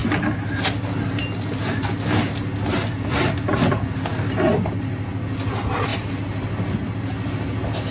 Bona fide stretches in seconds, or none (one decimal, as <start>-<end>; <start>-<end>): 0.0-7.9

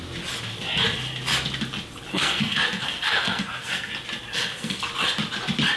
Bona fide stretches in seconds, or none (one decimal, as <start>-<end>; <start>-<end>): 0.0-2.1; 3.9-4.3; 4.8-5.8

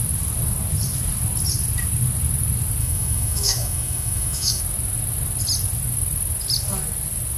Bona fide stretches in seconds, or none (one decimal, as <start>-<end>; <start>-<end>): 0.0-2.8; 4.6-7.4

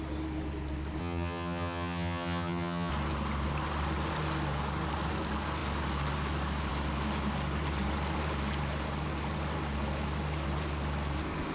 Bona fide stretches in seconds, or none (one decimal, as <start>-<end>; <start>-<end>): 0.0-1.0; 2.9-11.5

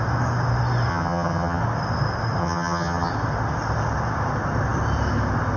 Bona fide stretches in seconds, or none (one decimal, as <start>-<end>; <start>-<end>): 0.0-0.9; 1.6-2.4; 3.1-5.6